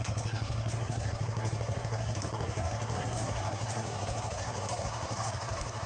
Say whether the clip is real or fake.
fake